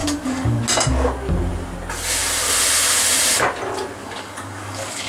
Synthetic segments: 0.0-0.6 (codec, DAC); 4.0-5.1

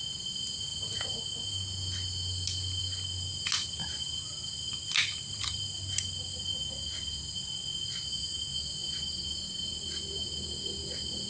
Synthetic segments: none

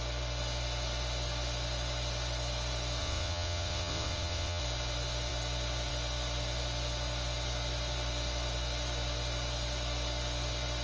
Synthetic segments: 3.0-4.6 (vocoder, WaveNeXt)